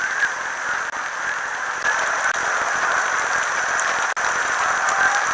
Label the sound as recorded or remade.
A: recorded